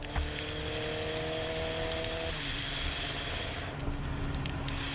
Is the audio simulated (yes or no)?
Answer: no